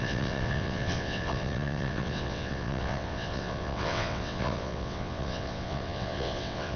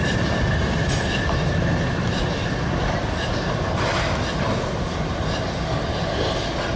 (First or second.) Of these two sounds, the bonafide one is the second